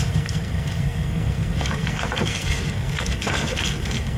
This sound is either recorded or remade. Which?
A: remade